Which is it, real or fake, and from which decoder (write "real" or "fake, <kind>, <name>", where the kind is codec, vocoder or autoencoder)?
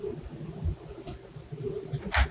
real